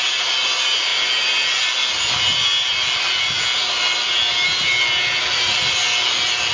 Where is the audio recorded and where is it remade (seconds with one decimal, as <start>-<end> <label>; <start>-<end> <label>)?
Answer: 0.0-6.5 recorded